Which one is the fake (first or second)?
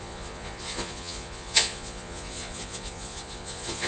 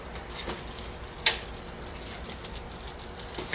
first